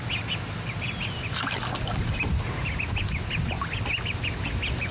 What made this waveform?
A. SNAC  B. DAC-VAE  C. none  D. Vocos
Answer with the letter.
C